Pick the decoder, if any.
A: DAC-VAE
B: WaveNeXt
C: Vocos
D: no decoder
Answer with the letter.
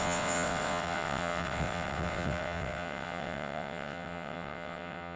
B